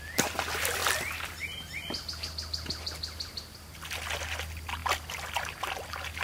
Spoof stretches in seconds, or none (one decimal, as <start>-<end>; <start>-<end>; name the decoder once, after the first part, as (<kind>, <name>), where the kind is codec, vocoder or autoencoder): 0.8-3.4 (vocoder, BigVGAN v2); 4.8-5.3

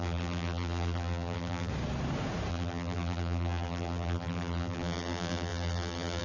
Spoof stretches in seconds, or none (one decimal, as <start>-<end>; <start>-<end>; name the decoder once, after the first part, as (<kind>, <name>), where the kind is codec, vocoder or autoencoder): 0.0-1.7 (vocoder, BigVGAN v2); 2.5-6.2

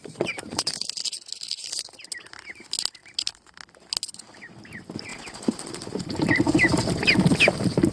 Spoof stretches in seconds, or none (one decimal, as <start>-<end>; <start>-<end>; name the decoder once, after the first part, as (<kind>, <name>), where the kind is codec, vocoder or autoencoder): 3.0-4.0 (vocoder, BigVGAN v2); 5.1-7.9